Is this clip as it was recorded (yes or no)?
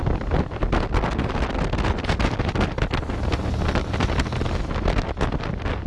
yes